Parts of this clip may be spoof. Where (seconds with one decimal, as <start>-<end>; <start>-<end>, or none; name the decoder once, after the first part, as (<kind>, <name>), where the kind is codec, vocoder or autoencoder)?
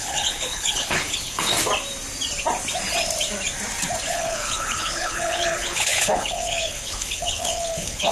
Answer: 0.0-1.5 (codec, HILCodec); 4.1-8.1